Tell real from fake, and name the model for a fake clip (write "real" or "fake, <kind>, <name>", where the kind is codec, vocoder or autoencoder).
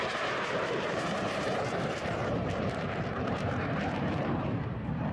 fake, vocoder, BigVGAN v2